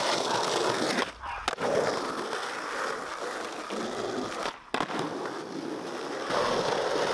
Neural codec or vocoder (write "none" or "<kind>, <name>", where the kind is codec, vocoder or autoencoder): none